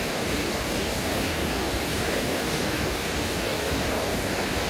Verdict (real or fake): fake